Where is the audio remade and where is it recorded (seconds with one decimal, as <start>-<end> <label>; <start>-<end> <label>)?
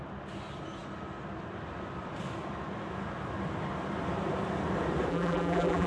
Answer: 0.0-5.1 recorded; 5.1-5.9 remade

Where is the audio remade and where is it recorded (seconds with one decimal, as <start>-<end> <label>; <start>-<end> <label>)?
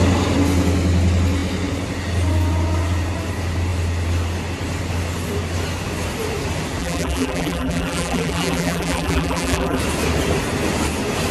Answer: 0.0-6.8 recorded; 6.8-9.8 remade; 9.8-11.3 recorded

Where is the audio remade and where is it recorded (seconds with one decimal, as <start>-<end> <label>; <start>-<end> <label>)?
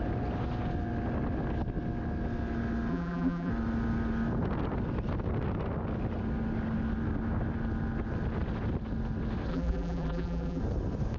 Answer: 0.0-2.9 recorded; 2.9-3.5 remade; 3.5-9.5 recorded; 9.5-10.6 remade; 10.6-11.2 recorded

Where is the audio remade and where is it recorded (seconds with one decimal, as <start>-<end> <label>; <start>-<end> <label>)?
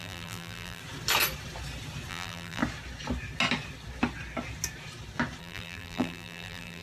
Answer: 0.0-0.8 remade; 0.8-2.1 recorded; 2.1-2.6 remade; 2.6-5.4 recorded; 5.4-6.8 remade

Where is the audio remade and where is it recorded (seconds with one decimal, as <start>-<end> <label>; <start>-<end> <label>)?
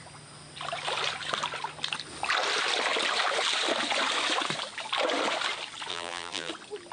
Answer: 0.0-5.9 recorded; 5.9-6.5 remade; 6.5-6.9 recorded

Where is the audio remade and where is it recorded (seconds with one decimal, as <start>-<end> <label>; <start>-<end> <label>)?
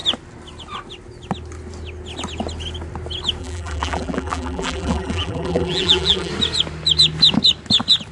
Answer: 0.0-3.4 recorded; 3.4-6.3 remade; 6.3-8.1 recorded